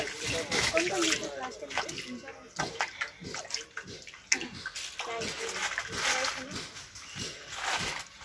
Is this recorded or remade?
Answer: recorded